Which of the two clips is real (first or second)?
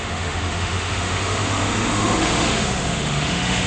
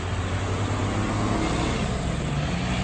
second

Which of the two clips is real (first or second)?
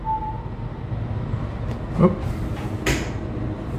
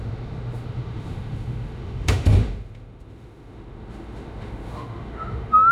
first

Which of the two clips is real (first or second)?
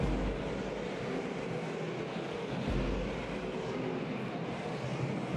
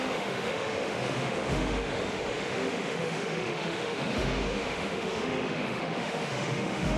first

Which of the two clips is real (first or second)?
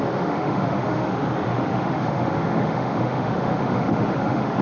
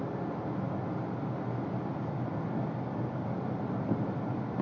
second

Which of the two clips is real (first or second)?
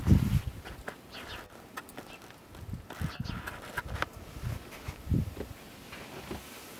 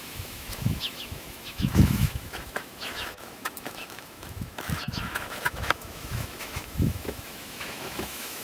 first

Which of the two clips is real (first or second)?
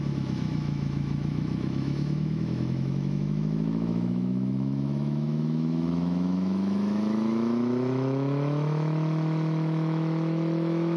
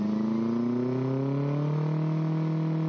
second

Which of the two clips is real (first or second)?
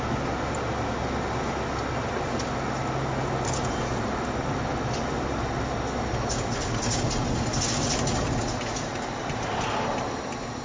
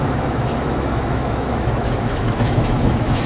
first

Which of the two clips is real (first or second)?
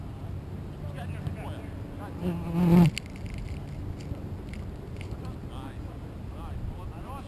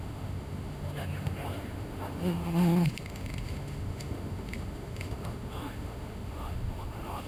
first